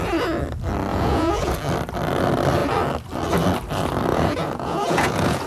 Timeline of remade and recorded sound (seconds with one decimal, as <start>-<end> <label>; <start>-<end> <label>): 0.0-0.9 recorded; 0.9-1.5 remade; 1.5-4.1 recorded; 4.1-5.5 remade